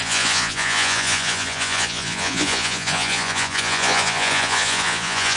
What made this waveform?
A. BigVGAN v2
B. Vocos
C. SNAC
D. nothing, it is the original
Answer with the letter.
B